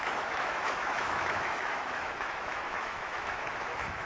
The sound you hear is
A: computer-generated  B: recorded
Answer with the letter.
A